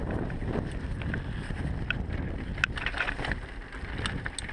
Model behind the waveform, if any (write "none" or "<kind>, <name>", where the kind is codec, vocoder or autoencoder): none